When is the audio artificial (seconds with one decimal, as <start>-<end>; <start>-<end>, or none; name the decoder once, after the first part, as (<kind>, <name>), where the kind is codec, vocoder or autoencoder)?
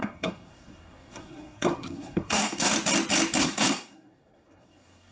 0.0-2.7 (codec, SNAC); 3.4-5.1